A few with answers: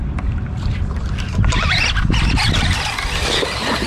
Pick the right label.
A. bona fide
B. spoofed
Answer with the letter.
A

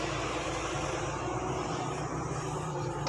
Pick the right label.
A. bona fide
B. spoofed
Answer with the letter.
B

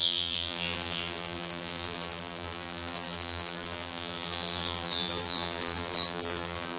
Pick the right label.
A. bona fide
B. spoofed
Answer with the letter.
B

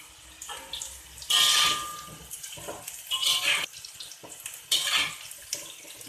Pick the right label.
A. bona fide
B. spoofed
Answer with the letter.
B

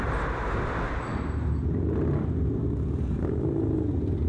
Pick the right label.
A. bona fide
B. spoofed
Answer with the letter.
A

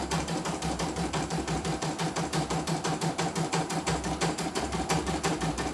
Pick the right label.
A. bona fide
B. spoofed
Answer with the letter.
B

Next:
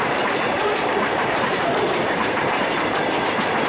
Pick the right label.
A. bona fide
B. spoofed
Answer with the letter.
B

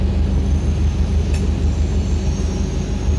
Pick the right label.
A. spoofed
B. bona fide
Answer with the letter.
B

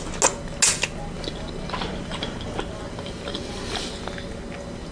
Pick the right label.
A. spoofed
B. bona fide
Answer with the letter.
B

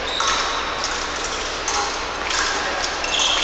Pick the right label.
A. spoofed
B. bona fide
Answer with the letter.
B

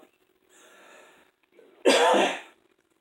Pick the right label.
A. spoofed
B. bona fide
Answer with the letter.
B